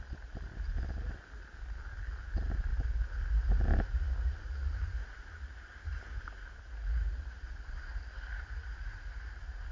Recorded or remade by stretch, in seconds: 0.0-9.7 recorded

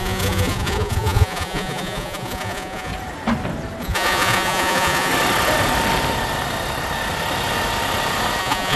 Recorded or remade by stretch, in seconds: 0.0-2.9 remade; 2.9-3.8 recorded; 3.8-5.1 remade; 5.1-8.4 recorded; 8.4-8.8 remade

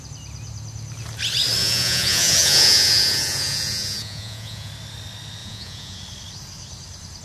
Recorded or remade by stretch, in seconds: 0.0-1.6 recorded; 1.6-4.7 remade; 4.7-5.4 recorded; 5.4-6.0 remade; 6.0-7.2 recorded

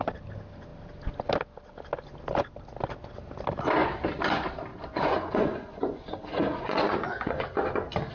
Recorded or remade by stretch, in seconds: 0.0-4.7 recorded; 4.7-7.4 remade; 7.4-8.1 recorded

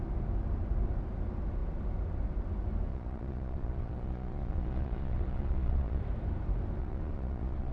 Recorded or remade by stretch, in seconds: 0.0-2.9 recorded; 2.9-6.0 remade; 6.0-6.8 recorded; 6.8-7.7 remade

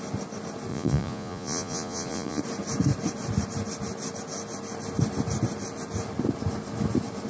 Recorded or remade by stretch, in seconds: 0.0-0.7 recorded; 0.7-2.4 remade; 2.4-7.3 recorded